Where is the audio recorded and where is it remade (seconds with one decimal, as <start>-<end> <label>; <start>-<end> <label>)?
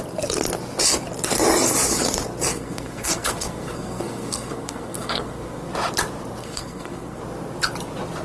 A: 0.0-2.5 recorded; 2.5-5.7 remade; 5.7-6.4 recorded; 6.4-7.2 remade; 7.2-8.2 recorded